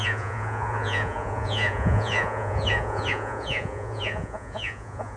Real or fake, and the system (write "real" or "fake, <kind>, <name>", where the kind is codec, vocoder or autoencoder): fake, vocoder, Vocos